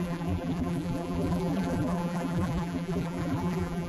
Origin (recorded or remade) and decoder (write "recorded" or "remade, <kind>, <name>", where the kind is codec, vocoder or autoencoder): remade, vocoder, BigVGAN v2